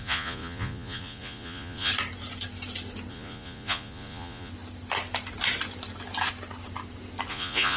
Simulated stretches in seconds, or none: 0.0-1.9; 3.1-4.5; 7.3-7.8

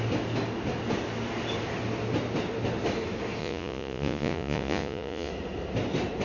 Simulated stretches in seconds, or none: 3.4-5.3

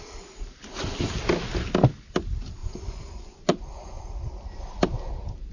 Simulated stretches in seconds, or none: 2.6-4.0

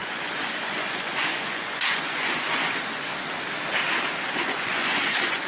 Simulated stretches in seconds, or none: 0.0-3.1; 4.3-5.5